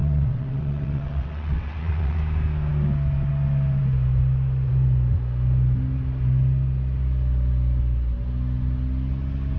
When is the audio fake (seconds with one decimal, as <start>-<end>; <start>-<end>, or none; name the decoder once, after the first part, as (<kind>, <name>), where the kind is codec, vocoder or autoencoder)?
0.0-2.2 (vocoder, WaveNeXt)